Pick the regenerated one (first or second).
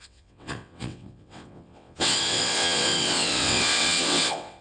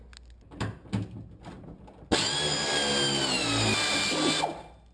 first